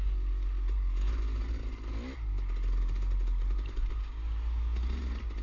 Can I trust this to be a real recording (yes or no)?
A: yes